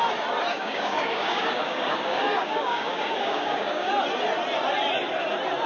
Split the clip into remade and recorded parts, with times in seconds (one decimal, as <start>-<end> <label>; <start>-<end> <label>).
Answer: 0.0-0.5 recorded; 0.5-3.9 remade; 3.9-5.7 recorded